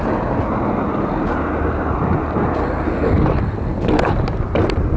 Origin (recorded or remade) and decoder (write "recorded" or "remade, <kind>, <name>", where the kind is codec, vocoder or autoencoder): recorded